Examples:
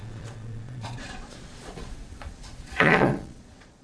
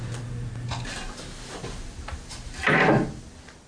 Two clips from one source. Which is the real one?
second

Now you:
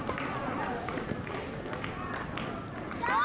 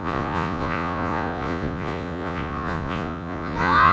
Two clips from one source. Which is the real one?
first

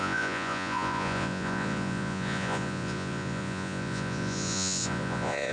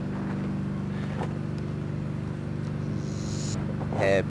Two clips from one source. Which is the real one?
second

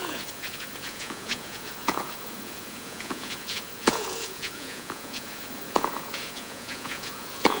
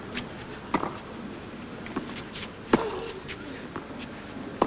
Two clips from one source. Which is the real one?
second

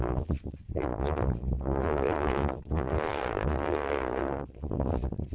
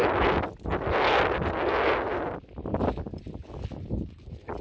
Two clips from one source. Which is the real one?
second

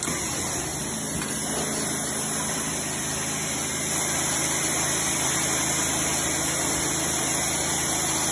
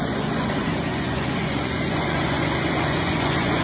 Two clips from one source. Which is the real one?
first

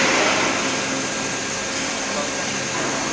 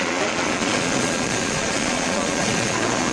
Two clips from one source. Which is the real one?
first